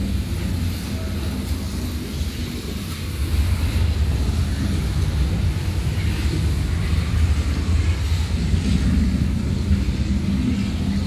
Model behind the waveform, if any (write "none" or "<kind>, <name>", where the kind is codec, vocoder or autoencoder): none